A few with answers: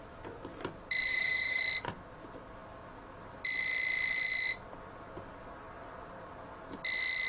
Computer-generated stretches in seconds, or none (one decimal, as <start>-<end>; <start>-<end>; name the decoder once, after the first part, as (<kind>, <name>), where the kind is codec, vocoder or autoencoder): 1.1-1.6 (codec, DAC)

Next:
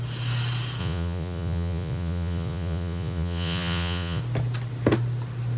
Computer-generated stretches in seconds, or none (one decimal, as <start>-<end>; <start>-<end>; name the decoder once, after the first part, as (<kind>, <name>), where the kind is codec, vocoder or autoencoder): 0.8-4.2 (vocoder, Vocos)

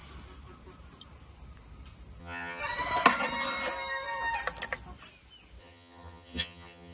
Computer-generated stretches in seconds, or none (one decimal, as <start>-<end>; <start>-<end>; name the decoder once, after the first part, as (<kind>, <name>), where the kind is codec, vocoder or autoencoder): 2.2-2.6 (vocoder, HiFi-GAN); 5.6-6.9